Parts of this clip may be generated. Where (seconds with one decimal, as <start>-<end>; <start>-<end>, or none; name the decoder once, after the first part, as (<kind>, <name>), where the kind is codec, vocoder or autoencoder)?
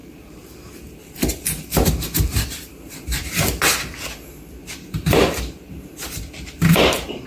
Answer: 0.0-3.3 (vocoder, BigVGAN v2); 4.6-7.3